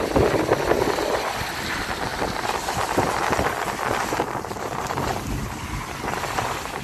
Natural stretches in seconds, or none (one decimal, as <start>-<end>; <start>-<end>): 0.0-6.8